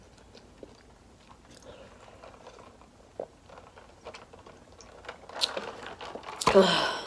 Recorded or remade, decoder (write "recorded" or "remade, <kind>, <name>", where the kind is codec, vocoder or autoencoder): recorded